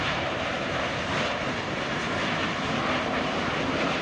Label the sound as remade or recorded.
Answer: remade